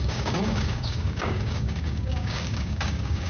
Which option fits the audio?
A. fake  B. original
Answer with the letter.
A